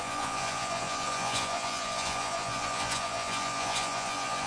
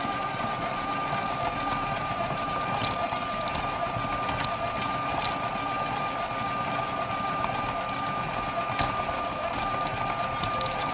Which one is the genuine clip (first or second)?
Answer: second